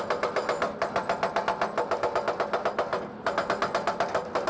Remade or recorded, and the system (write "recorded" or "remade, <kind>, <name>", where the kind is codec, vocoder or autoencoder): recorded